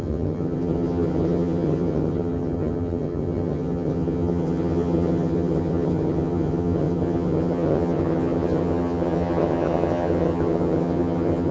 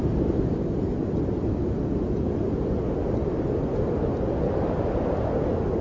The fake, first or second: first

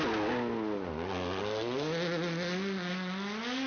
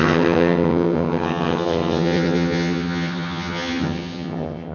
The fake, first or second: second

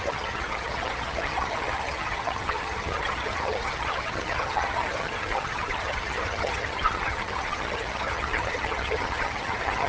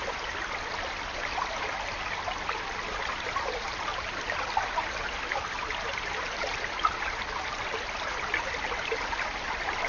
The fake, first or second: first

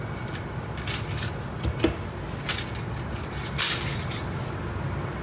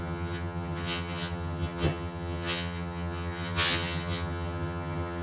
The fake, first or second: second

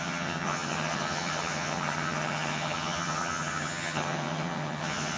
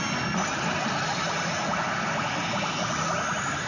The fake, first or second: first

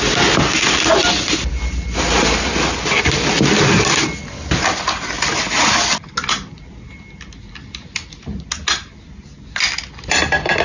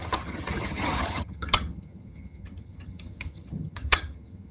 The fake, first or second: second